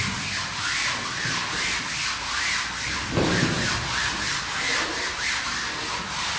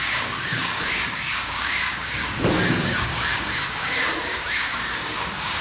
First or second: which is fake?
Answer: second